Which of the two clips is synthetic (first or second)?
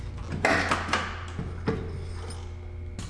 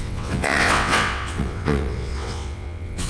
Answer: second